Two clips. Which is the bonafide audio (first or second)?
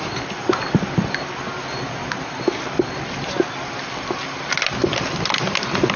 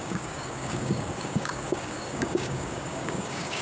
first